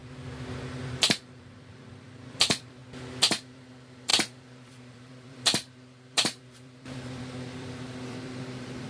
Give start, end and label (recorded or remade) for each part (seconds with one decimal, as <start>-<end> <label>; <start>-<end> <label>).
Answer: 0.0-1.2 recorded; 1.2-2.8 remade; 2.8-3.3 recorded; 3.3-8.9 remade